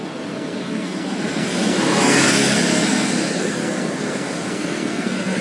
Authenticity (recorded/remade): remade